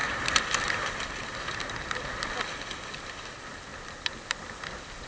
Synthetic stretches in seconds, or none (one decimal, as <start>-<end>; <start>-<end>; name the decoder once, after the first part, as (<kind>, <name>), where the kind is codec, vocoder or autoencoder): none